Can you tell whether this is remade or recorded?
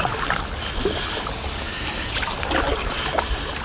recorded